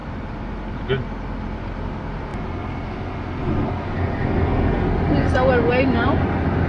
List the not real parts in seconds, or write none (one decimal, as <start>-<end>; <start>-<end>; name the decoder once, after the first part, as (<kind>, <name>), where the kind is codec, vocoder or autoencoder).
none